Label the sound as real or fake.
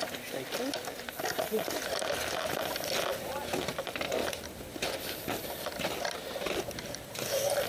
real